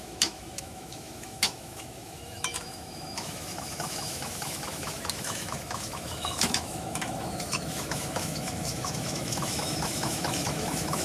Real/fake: fake